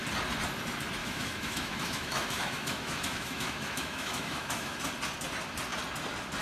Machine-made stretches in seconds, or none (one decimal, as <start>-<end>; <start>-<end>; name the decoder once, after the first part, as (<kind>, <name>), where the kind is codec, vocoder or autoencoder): 1.0-4.8 (autoencoder, DAC-VAE)